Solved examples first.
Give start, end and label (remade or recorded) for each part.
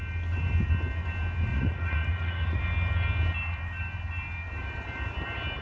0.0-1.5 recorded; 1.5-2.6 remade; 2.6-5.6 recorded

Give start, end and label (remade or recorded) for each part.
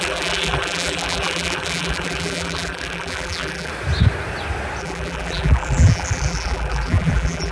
0.0-3.7 remade; 3.7-4.8 recorded; 4.8-7.5 remade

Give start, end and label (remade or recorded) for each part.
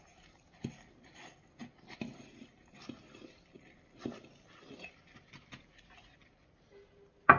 0.0-7.4 recorded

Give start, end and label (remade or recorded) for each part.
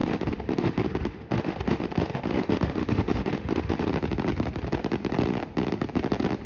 0.0-3.9 remade; 3.9-6.5 recorded